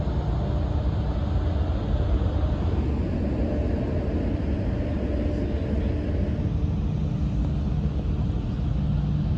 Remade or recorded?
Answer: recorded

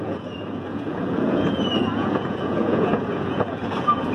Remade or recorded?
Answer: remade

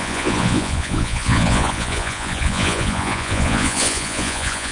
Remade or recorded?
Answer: remade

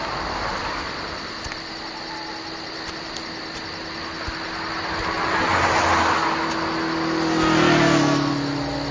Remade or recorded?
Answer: recorded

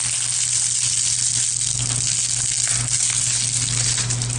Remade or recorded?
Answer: recorded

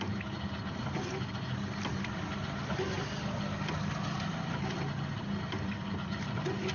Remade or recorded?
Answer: recorded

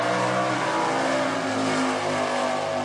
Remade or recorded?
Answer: recorded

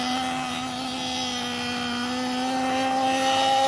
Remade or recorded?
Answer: recorded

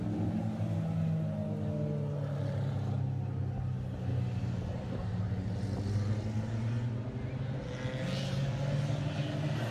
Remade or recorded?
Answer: recorded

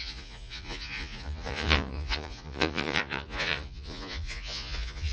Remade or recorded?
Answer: remade